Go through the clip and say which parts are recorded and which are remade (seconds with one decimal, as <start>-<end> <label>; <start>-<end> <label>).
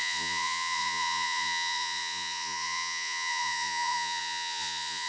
0.0-5.1 remade